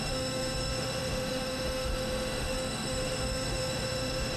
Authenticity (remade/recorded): remade